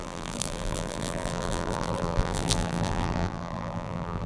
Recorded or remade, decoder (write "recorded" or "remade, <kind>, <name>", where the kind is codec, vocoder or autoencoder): remade, vocoder, BigVGAN v2